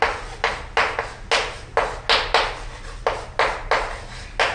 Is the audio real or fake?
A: real